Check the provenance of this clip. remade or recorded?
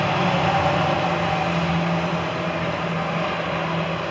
recorded